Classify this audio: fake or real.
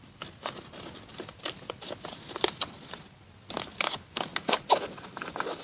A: real